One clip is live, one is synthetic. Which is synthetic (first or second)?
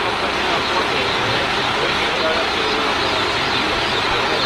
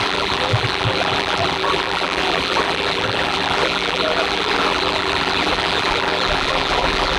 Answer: second